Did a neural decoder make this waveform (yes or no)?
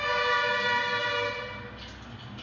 no